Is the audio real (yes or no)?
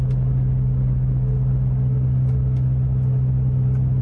yes